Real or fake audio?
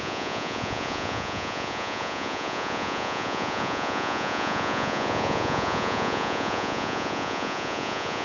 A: fake